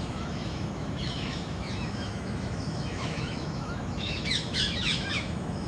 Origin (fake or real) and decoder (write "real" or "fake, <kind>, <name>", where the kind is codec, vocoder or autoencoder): fake, autoencoder, DAC-VAE